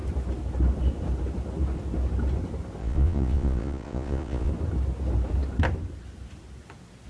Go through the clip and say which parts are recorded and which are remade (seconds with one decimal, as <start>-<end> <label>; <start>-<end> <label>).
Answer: 0.0-2.8 recorded; 2.8-4.5 remade; 4.5-7.1 recorded